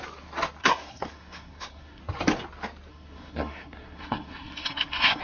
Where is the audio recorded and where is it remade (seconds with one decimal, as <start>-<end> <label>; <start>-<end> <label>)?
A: 0.0-0.6 recorded; 0.6-2.0 remade; 2.0-2.9 recorded; 2.9-5.2 remade